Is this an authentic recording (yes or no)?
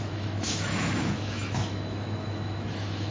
no